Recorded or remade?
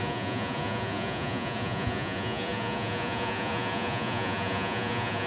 remade